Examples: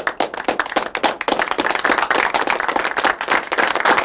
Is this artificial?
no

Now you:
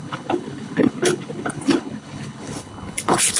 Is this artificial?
yes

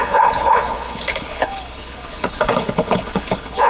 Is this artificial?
yes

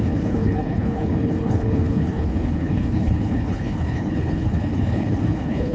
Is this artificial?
yes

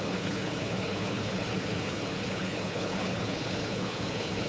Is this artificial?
yes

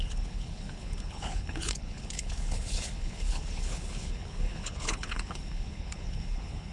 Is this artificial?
yes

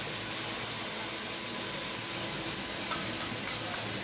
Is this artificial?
no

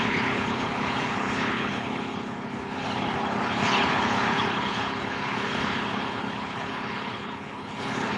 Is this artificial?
yes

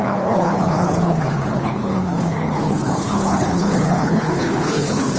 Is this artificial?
yes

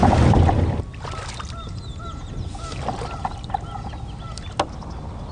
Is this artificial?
no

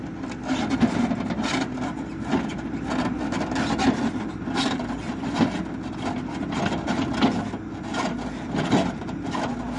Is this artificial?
no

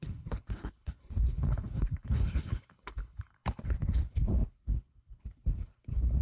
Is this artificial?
yes